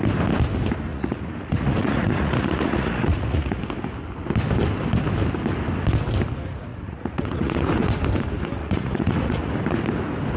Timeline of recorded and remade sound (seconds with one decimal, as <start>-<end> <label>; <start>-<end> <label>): 0.0-0.9 recorded; 0.9-3.6 remade; 3.6-6.7 recorded; 6.7-7.7 remade; 7.7-8.6 recorded; 8.6-9.5 remade; 9.5-10.4 recorded